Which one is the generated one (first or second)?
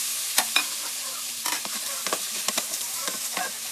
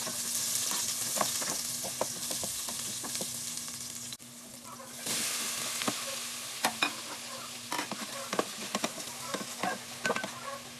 first